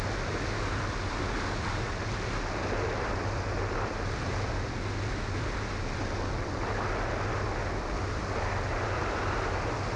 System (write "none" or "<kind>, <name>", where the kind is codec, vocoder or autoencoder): none